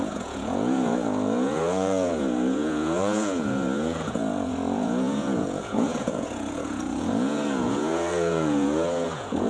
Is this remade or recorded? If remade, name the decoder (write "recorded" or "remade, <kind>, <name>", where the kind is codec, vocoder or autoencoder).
remade, vocoder, Vocos